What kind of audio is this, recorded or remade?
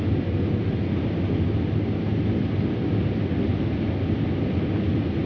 recorded